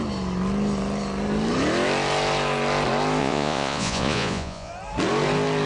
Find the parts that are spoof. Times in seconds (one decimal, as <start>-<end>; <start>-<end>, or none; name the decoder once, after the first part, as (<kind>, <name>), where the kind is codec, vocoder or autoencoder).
3.2-4.7 (vocoder, Vocos)